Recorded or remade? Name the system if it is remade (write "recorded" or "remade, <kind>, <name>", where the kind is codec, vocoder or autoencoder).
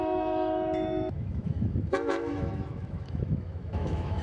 remade, autoencoder, DAC-VAE